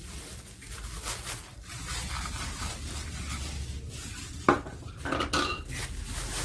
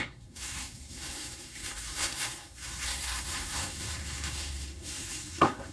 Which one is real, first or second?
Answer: first